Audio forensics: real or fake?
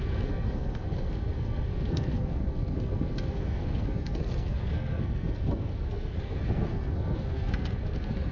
fake